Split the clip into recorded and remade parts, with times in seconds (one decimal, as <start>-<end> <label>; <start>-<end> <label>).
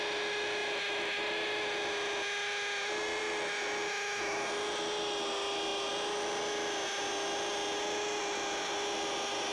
0.0-9.5 recorded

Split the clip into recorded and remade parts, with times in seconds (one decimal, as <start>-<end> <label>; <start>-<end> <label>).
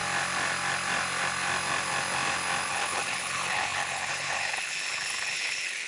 0.0-2.7 recorded; 2.7-5.9 remade